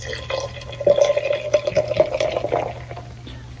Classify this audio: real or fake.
real